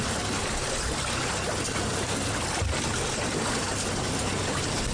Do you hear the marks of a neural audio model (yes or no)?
no